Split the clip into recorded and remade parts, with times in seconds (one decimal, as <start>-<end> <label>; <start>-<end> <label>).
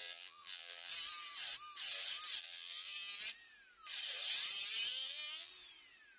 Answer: 0.0-0.9 remade; 0.9-2.4 recorded; 2.4-3.2 remade; 3.2-4.9 recorded; 4.9-5.5 remade; 5.5-6.2 recorded